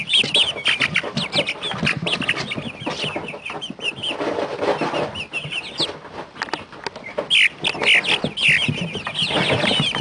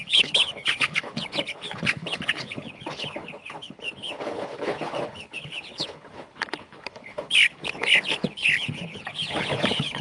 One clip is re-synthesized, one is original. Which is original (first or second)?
first